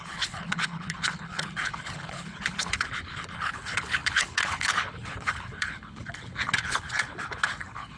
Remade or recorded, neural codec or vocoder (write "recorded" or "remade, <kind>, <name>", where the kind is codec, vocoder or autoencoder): remade, codec, HILCodec